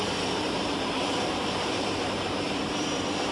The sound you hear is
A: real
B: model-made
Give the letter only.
B